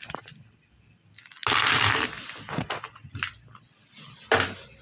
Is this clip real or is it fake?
real